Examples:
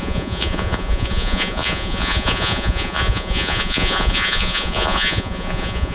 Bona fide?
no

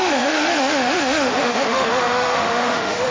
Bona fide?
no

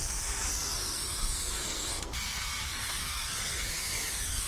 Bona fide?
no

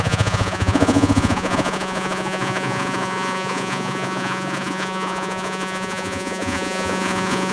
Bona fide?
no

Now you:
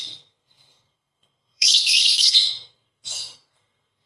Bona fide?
no